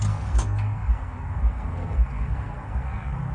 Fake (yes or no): yes